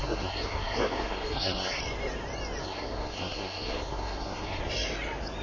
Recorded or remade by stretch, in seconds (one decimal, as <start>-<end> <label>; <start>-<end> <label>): 0.0-1.8 remade; 1.8-2.6 recorded; 2.6-4.6 remade; 4.6-5.4 recorded

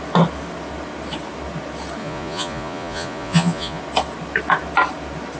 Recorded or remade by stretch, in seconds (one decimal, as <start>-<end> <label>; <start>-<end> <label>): 0.0-2.0 recorded; 2.0-3.8 remade; 3.8-5.4 recorded

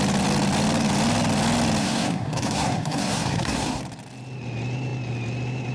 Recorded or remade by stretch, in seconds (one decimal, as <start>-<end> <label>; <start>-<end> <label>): 0.0-1.8 recorded; 1.8-3.8 remade; 3.8-5.7 recorded

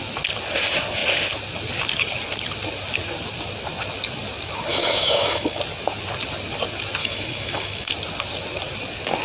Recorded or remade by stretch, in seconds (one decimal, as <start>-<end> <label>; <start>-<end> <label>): 0.0-4.7 recorded; 4.7-5.6 remade; 5.6-7.0 recorded; 7.0-7.9 remade; 7.9-9.2 recorded

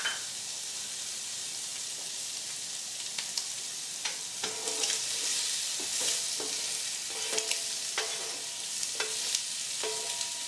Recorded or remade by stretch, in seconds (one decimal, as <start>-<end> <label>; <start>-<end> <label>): 0.0-10.5 recorded